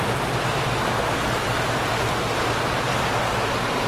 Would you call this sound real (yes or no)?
yes